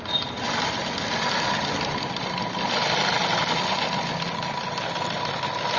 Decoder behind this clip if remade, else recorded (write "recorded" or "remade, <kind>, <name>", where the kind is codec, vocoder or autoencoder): recorded